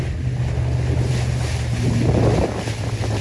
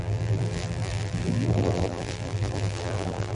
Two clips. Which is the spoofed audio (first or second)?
second